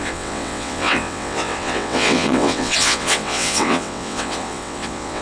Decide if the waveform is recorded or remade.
remade